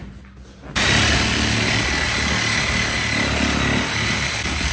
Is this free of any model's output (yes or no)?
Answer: yes